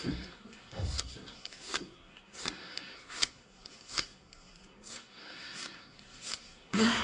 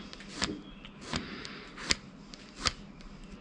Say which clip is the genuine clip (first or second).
second